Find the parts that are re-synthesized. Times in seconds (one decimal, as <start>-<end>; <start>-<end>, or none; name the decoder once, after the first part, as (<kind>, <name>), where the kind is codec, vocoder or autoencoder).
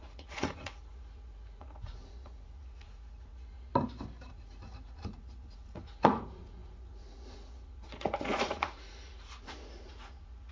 0.0-3.7 (vocoder, Vocos); 4.3-10.5